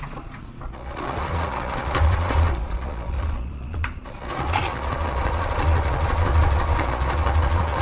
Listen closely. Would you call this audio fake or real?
fake